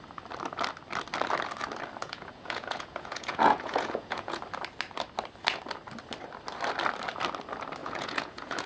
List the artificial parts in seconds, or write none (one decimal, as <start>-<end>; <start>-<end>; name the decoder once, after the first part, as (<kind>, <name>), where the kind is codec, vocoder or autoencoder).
2.0-4.4 (vocoder, Vocos); 7.8-8.7